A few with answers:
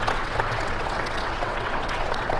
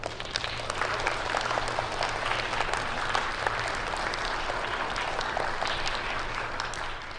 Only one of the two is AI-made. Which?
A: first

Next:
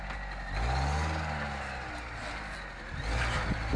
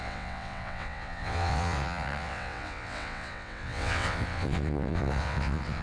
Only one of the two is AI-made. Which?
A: second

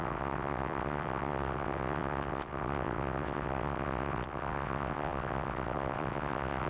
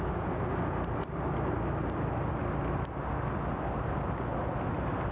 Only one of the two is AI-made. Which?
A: first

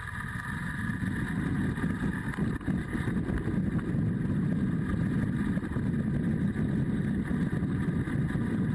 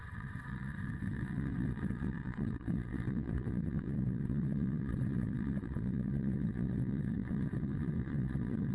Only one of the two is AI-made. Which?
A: second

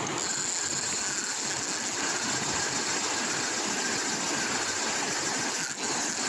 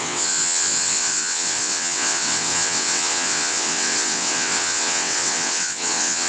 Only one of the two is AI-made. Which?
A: second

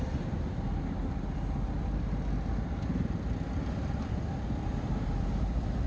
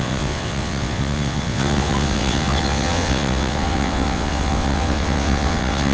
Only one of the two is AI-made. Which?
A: second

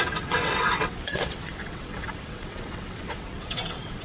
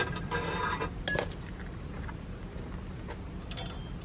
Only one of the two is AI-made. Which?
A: first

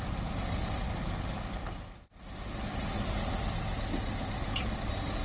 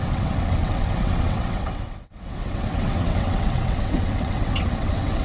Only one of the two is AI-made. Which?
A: second